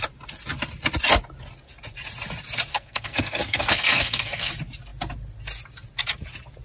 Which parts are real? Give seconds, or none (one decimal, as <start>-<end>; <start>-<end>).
0.0-2.7; 4.5-6.6